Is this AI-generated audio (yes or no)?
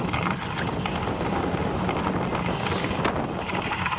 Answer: no